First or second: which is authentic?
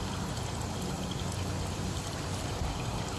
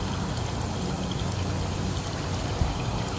second